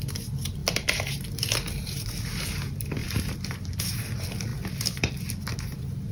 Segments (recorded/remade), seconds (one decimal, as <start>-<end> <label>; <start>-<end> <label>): 0.0-0.6 recorded; 0.6-2.5 remade; 2.5-3.0 recorded; 3.0-3.8 remade; 3.8-4.5 recorded; 4.5-5.1 remade; 5.1-6.1 recorded